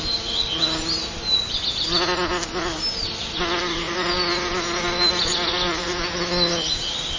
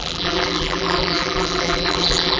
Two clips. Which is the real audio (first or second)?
first